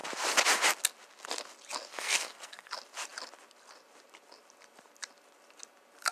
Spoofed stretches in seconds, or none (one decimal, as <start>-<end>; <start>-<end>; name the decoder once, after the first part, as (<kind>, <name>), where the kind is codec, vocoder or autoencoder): 1.9-2.7 (codec, SNAC)